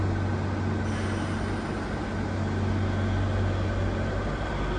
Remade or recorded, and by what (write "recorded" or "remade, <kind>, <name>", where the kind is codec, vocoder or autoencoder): recorded